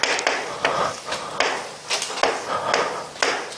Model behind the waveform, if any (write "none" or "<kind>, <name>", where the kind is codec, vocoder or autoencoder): none